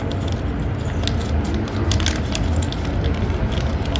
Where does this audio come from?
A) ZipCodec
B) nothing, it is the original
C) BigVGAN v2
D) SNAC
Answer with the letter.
B